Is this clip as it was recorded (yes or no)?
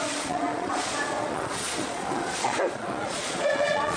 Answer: no